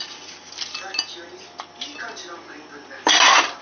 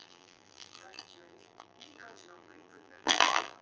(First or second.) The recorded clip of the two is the first